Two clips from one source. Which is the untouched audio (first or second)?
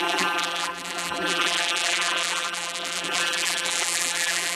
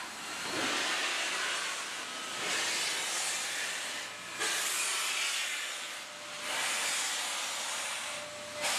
second